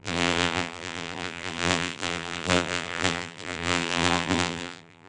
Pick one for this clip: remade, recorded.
remade